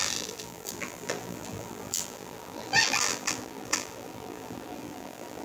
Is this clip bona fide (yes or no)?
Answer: no